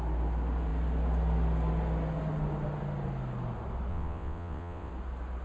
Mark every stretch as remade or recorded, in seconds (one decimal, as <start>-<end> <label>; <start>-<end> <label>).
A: 0.0-3.9 recorded; 3.9-4.9 remade; 4.9-5.4 recorded